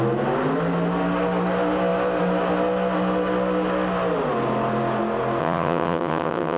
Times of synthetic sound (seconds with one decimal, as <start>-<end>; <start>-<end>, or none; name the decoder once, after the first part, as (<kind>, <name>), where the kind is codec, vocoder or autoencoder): 5.4-6.6 (vocoder, HiFi-GAN)